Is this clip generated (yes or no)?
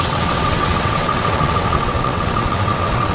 yes